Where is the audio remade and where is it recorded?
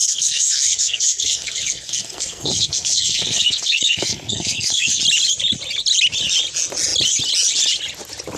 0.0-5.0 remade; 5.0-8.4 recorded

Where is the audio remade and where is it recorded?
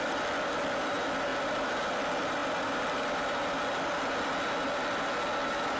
0.0-5.8 recorded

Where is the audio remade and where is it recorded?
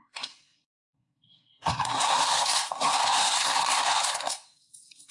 0.0-5.1 remade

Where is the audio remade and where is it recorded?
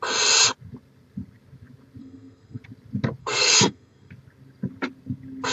0.0-2.0 recorded; 2.0-2.6 remade; 2.6-3.2 recorded; 3.2-4.1 remade; 4.1-5.5 recorded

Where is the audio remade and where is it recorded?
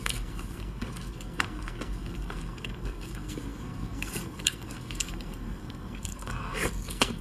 0.0-7.2 remade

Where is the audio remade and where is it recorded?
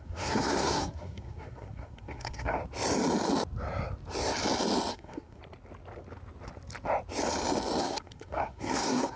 0.0-2.6 remade; 2.6-4.9 recorded; 4.9-5.4 remade; 5.4-7.8 recorded; 7.8-9.2 remade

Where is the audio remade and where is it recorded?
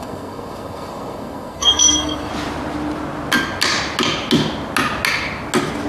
0.0-2.3 remade; 2.3-5.9 recorded